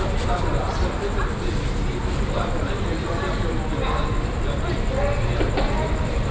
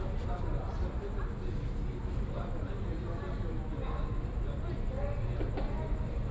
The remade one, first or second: first